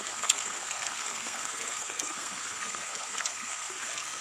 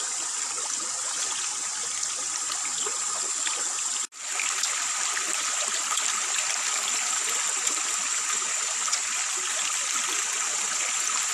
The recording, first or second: second